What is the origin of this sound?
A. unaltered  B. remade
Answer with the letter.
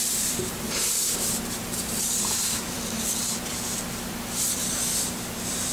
B